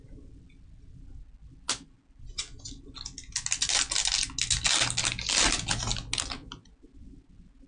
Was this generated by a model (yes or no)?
no